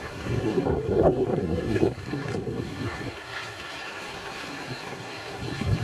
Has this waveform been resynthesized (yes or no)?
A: yes